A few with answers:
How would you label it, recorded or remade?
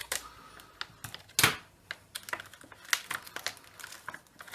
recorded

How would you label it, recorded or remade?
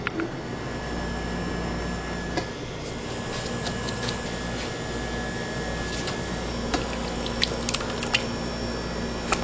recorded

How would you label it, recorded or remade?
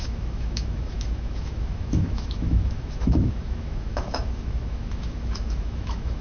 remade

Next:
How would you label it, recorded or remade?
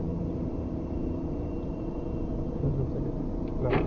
remade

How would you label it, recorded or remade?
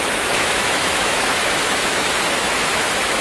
remade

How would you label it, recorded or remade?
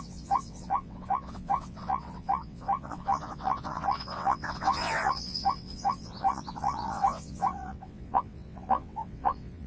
remade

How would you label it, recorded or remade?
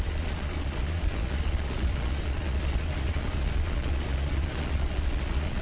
remade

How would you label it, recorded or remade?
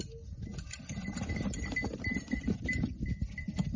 recorded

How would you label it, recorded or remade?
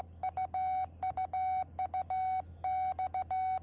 recorded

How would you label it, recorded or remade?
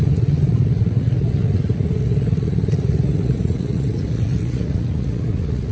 remade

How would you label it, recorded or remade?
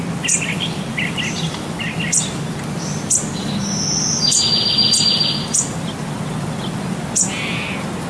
recorded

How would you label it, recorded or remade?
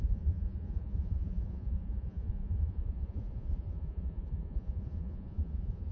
remade